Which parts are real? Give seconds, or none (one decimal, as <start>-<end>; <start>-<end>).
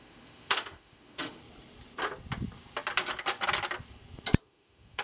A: 1.4-4.4